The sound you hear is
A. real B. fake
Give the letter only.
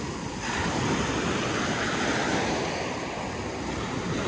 A